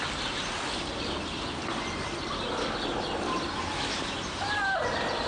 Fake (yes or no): no